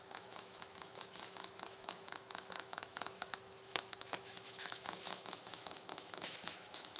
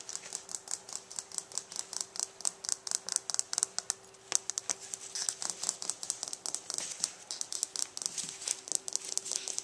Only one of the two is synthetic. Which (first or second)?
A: first